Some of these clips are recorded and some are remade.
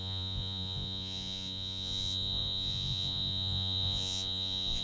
remade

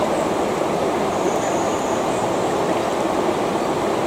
recorded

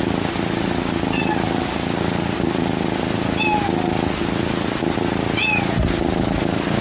recorded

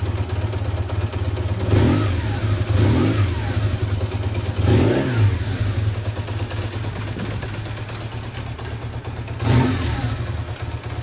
recorded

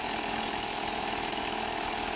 remade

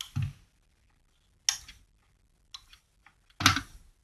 recorded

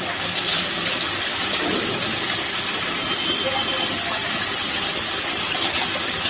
remade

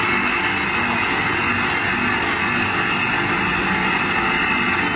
recorded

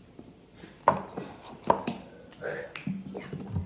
recorded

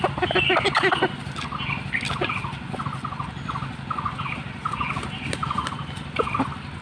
recorded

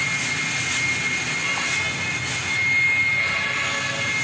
recorded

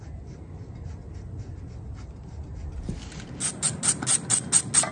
recorded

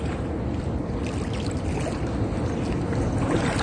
recorded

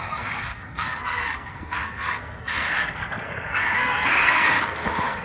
remade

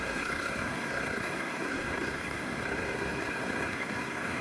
remade